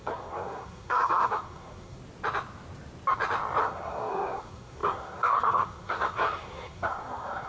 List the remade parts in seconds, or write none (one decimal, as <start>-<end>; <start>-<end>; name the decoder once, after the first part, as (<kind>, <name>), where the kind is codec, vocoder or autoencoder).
0.0-2.0 (codec, SNAC); 3.6-7.5